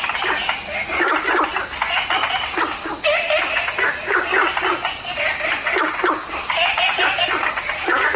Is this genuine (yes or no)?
yes